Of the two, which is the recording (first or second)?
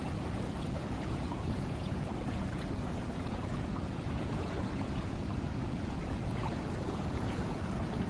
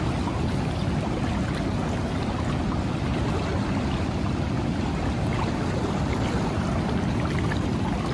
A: second